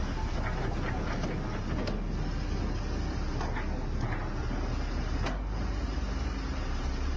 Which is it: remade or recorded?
recorded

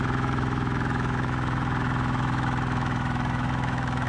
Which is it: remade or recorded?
remade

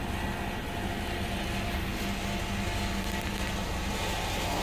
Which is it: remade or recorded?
recorded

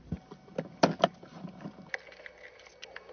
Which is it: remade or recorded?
recorded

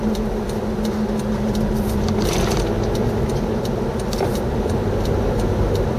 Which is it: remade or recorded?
recorded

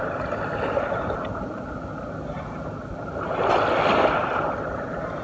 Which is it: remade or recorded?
recorded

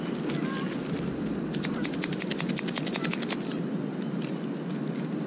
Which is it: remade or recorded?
recorded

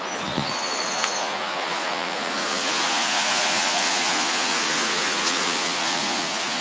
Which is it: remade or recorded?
remade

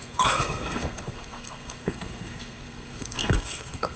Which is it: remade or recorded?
remade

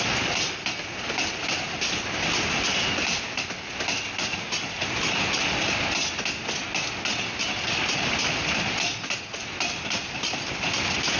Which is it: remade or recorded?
recorded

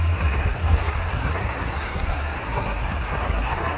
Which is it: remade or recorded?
remade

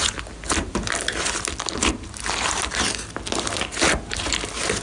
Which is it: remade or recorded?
recorded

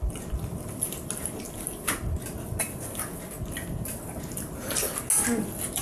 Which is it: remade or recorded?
recorded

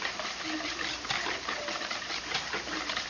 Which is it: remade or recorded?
remade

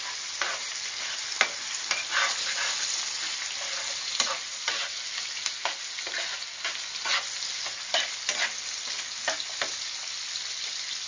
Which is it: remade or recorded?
recorded